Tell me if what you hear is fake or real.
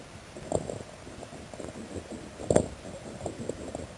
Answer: real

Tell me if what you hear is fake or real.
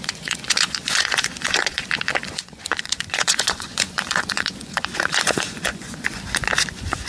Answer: fake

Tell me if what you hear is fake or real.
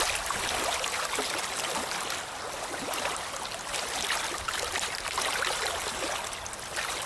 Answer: real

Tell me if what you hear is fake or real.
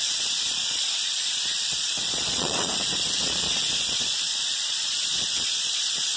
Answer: fake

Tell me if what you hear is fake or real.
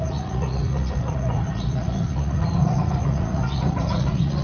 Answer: fake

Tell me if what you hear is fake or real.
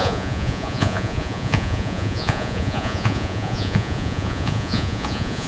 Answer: fake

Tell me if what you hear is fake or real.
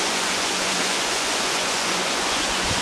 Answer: fake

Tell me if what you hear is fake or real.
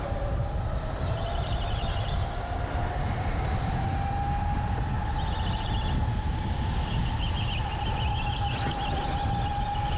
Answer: real